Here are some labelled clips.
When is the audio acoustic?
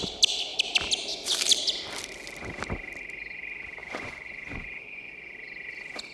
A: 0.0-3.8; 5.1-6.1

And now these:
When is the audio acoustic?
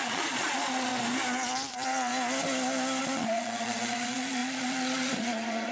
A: 0.9-1.7; 2.1-3.0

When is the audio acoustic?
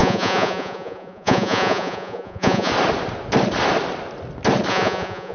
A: 2.7-4.7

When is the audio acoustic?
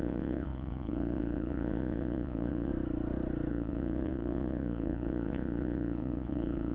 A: 2.7-3.5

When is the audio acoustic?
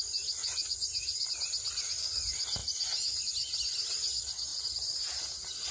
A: 0.0-0.4; 1.3-5.7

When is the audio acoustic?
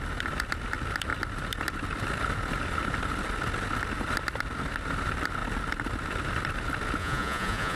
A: 0.0-7.0